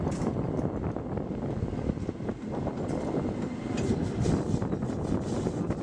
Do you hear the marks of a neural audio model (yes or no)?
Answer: no